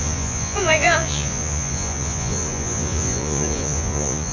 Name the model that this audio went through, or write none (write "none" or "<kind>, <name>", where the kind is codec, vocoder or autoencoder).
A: vocoder, Vocos